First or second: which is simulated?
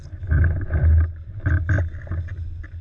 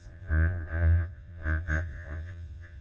second